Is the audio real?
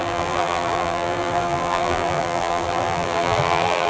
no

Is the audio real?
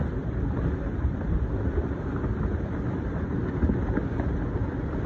yes